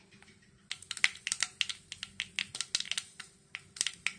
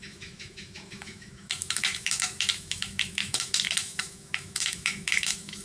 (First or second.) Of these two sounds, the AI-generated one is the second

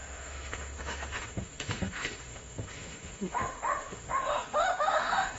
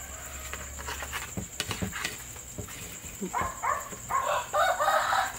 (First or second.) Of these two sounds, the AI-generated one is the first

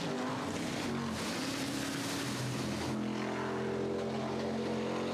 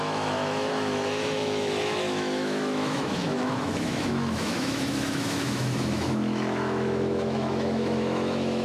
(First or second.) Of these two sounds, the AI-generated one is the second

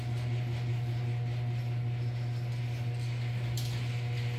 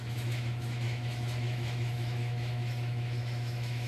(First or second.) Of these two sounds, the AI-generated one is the second